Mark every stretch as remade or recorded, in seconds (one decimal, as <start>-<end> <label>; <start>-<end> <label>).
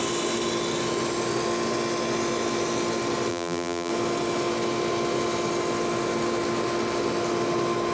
0.0-3.3 recorded; 3.3-3.9 remade; 3.9-7.9 recorded